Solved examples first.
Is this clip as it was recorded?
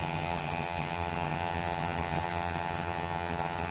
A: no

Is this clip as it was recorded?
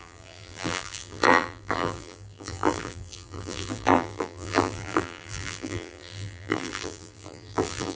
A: no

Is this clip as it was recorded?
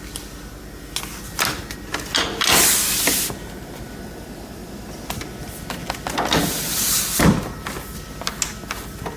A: yes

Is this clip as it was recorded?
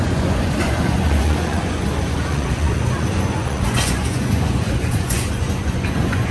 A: no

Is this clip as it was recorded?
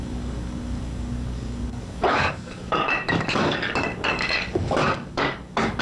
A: no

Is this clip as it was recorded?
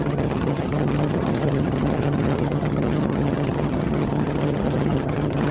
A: no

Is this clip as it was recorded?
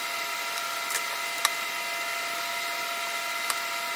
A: yes